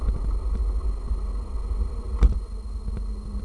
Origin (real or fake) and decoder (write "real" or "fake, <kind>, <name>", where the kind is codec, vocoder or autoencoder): real